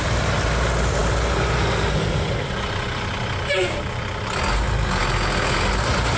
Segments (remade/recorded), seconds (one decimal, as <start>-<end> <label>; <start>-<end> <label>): 0.0-6.2 recorded